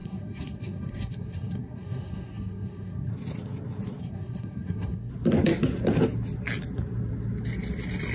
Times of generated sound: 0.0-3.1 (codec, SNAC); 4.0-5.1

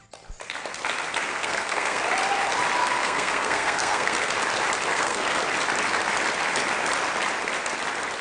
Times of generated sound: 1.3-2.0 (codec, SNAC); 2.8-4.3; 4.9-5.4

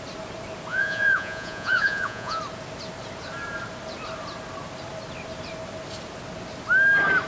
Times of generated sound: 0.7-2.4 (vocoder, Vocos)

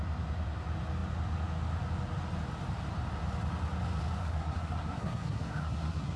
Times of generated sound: 4.2-6.2 (codec, SNAC)